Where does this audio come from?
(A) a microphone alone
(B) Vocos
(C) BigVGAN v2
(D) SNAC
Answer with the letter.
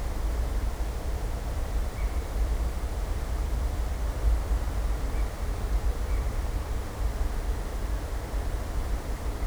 C